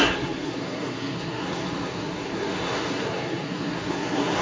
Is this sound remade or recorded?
remade